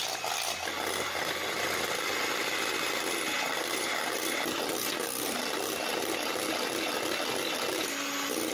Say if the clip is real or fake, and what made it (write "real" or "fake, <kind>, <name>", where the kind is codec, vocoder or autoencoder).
real